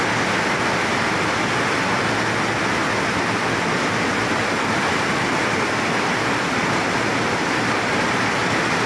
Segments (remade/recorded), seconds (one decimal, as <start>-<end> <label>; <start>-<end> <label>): 0.0-8.9 recorded